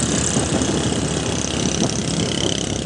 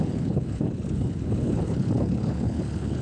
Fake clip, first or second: second